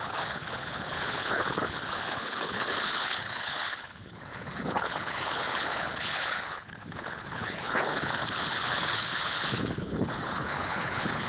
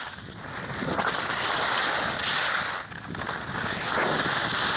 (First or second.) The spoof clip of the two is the first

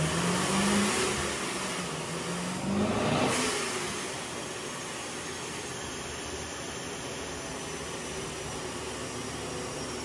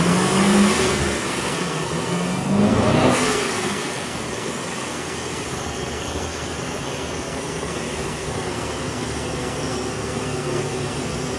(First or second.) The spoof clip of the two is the second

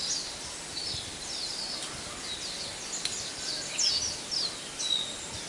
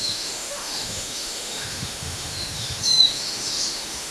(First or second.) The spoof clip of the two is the second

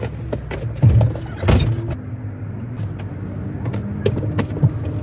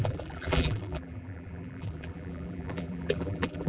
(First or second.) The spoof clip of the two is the second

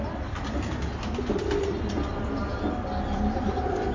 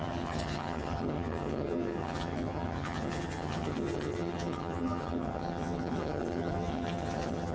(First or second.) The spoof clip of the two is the second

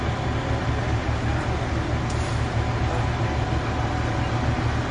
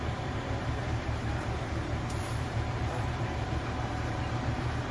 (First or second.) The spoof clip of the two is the second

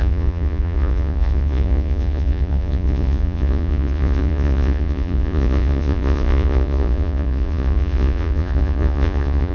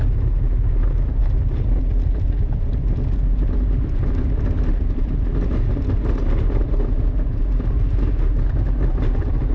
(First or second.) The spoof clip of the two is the first